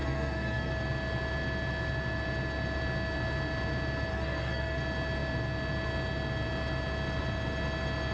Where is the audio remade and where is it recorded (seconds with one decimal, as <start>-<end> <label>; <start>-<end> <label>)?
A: 0.0-0.7 remade; 0.7-4.1 recorded; 4.1-4.8 remade; 4.8-8.1 recorded